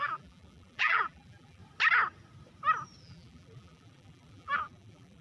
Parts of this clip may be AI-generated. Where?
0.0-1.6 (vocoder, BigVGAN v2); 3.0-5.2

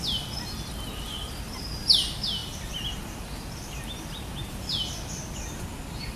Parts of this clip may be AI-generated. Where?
none